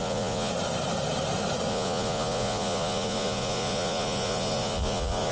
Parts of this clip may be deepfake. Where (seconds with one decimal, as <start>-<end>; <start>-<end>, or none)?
0.0-0.5; 1.7-5.3